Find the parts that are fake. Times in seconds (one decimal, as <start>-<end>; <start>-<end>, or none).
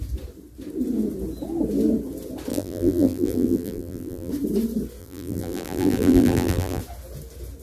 2.5-4.3; 5.0-6.8